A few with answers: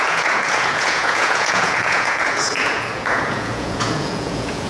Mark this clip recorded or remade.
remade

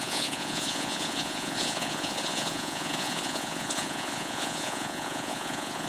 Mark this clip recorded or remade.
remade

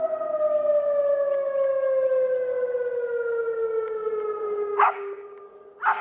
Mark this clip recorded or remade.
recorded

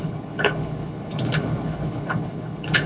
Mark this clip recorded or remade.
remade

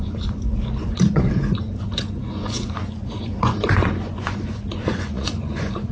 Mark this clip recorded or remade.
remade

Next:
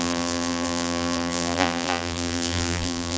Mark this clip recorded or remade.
remade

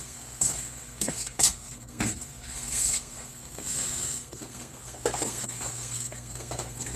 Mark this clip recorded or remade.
remade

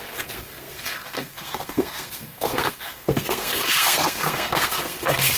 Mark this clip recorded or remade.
remade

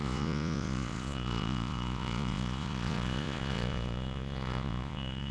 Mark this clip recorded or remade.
remade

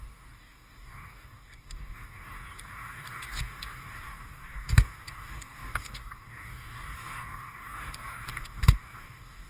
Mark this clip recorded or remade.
remade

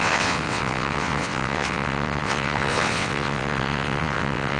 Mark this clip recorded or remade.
remade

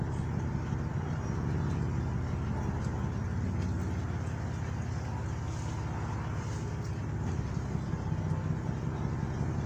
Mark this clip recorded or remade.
recorded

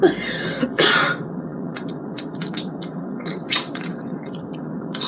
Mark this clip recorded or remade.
remade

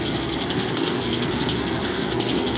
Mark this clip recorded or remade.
remade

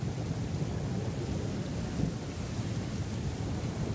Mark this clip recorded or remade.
recorded